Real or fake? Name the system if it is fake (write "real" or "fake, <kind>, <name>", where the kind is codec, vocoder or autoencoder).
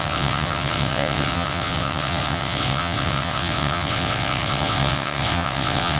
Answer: fake, vocoder, WaveNeXt